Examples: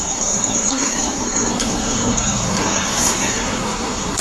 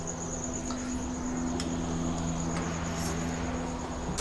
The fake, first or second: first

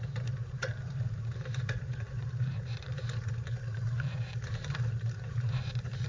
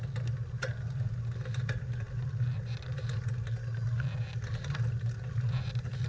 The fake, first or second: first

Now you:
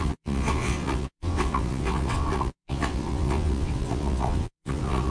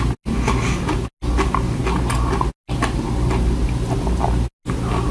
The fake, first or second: first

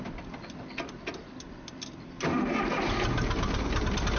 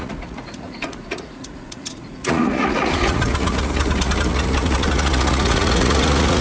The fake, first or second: second